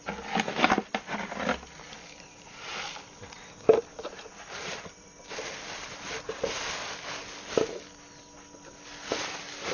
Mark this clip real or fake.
real